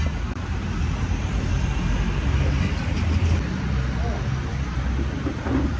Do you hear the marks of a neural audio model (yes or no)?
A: no